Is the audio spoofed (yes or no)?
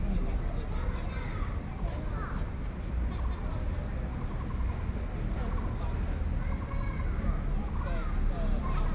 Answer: no